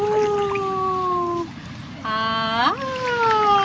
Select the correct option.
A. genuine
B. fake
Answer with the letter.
A